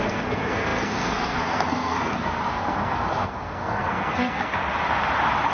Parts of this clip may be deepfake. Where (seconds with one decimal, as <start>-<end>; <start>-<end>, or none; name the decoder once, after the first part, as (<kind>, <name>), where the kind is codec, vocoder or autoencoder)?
0.0-4.6 (codec, SNAC)